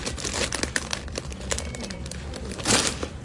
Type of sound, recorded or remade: remade